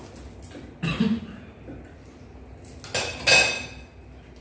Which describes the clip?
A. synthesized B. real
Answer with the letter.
B